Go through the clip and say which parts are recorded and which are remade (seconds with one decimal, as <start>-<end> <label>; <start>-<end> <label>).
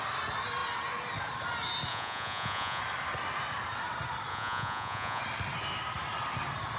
0.0-1.9 recorded; 1.9-2.8 remade; 2.8-4.3 recorded; 4.3-5.2 remade; 5.2-6.8 recorded